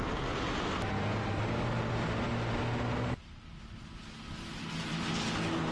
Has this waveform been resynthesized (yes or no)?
no